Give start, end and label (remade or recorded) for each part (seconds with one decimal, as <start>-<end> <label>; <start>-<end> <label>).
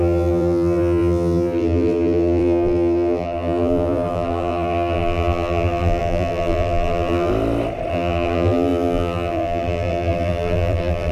0.0-7.3 remade; 7.3-7.9 recorded; 7.9-11.1 remade